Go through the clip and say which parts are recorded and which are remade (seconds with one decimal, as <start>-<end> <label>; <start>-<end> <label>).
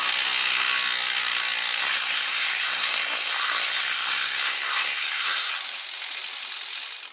0.0-1.8 recorded; 1.8-5.5 remade; 5.5-7.1 recorded